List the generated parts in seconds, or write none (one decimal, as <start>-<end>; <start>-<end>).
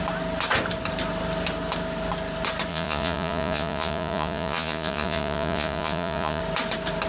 2.7-6.4